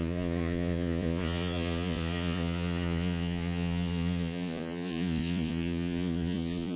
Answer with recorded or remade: remade